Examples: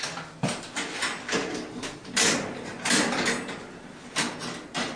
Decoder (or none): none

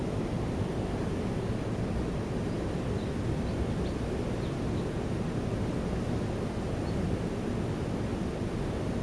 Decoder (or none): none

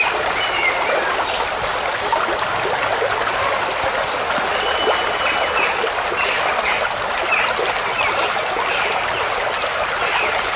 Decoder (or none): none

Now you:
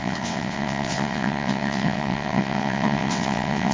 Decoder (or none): vocoder, WaveNeXt